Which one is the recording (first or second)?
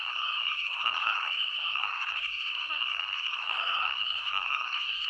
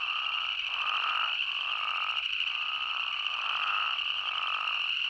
second